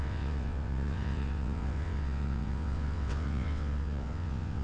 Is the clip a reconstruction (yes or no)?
yes